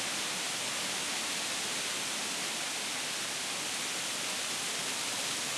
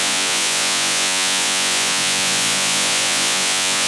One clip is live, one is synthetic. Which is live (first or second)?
first